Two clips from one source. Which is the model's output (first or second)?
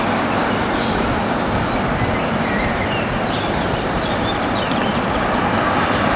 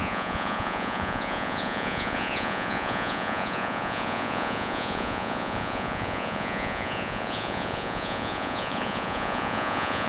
second